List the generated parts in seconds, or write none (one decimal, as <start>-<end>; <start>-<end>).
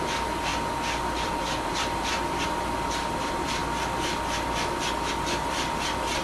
0.0-0.5; 1.0-3.6; 5.1-6.2